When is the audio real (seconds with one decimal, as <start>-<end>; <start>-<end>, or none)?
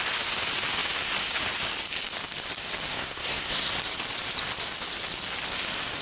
0.0-2.9; 3.8-6.0